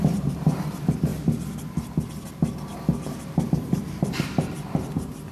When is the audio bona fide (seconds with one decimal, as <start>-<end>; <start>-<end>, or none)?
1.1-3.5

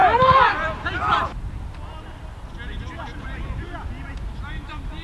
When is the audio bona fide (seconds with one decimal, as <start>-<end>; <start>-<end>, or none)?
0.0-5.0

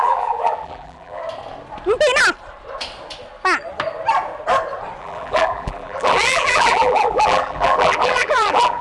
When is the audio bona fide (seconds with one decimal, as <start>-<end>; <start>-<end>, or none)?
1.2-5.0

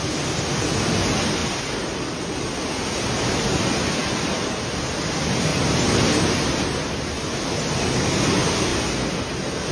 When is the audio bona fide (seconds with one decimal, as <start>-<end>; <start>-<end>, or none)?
0.0-4.0; 4.8-9.7

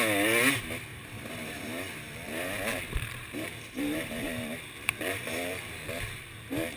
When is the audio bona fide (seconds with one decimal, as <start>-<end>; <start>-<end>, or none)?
0.0-0.9; 1.8-2.7